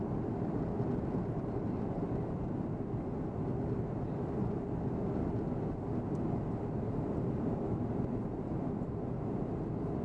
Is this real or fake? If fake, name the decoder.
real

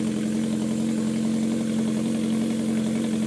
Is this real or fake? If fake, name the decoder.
real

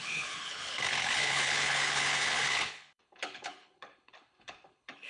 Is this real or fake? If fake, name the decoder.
fake, codec, HILCodec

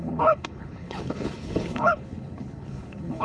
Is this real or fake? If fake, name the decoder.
fake, codec, HILCodec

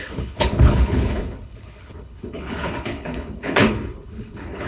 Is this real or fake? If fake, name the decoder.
fake, codec, HILCodec